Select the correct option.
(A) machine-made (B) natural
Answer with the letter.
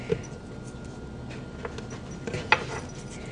B